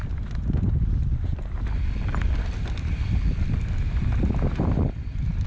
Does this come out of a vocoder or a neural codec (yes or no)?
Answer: no